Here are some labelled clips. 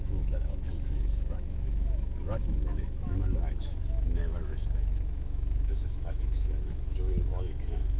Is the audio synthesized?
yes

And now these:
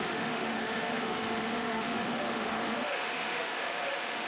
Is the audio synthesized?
yes